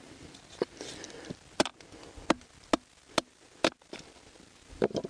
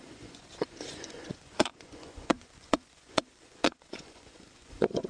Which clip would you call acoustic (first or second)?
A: first